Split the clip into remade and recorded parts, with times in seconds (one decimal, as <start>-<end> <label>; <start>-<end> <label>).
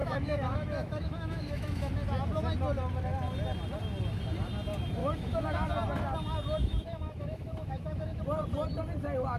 0.0-1.9 remade; 1.9-5.0 recorded; 5.0-5.7 remade; 5.7-6.6 recorded; 6.6-8.2 remade; 8.2-9.4 recorded